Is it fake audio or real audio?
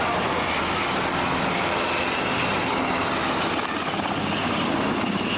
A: real